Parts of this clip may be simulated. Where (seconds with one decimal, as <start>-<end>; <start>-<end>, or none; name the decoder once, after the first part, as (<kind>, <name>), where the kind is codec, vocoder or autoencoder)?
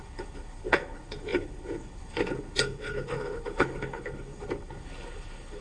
0.0-5.6 (codec, HILCodec)